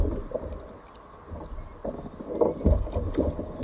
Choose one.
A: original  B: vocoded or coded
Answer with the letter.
A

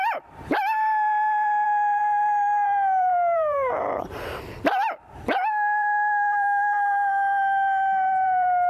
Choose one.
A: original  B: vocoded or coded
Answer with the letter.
B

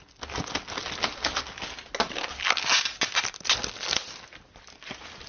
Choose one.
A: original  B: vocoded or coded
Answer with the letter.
A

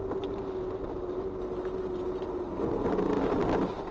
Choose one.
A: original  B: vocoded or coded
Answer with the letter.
A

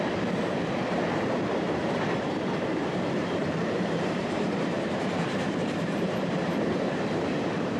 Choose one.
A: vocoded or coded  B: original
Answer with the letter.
A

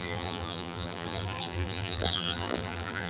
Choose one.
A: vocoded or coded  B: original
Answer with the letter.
A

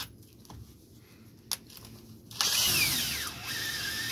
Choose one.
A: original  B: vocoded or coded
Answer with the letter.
A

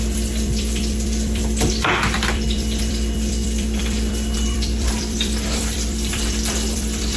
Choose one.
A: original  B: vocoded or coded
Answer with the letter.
B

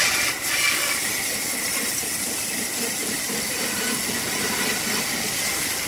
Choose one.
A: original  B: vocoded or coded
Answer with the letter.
A